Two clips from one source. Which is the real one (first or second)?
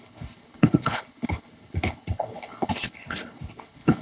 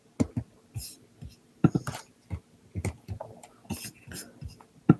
second